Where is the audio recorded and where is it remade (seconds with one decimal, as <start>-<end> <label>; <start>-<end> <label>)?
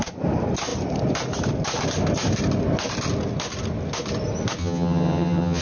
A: 0.0-4.6 recorded; 4.6-5.6 remade